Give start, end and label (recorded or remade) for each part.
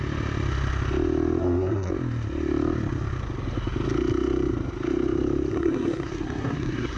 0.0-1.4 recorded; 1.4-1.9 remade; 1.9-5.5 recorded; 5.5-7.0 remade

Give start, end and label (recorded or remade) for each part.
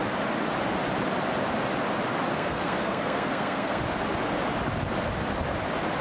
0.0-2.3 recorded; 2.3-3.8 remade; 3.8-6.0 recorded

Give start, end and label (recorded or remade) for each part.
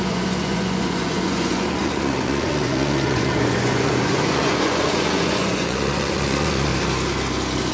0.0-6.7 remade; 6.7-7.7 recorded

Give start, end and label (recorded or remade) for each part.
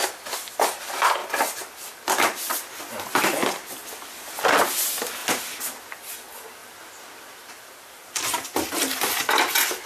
0.0-1.2 recorded; 1.2-2.8 remade; 2.8-5.2 recorded; 5.2-6.0 remade; 6.0-6.6 recorded; 6.6-9.2 remade; 9.2-9.9 recorded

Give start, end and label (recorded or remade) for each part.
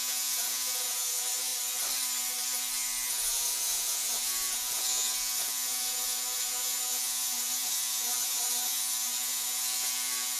0.0-1.5 remade; 1.5-3.1 recorded; 3.1-10.4 remade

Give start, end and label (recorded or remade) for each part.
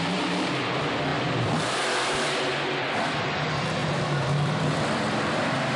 0.0-1.1 recorded; 1.1-3.2 remade; 3.2-3.8 recorded; 3.8-5.8 remade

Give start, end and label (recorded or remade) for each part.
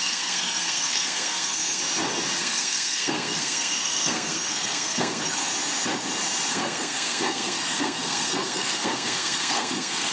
0.0-1.8 remade; 1.8-2.4 recorded; 2.4-5.5 remade; 5.5-6.5 recorded; 6.5-10.1 remade